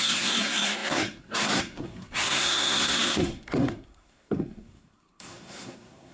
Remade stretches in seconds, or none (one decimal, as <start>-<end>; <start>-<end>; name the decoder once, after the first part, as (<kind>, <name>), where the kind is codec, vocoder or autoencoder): 0.0-6.1 (codec, SNAC)